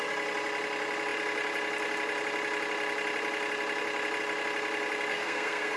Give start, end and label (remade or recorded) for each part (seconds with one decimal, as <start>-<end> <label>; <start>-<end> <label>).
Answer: 0.0-5.1 recorded; 5.1-5.8 remade